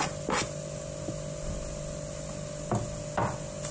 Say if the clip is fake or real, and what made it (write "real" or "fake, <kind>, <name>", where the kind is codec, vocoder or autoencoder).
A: real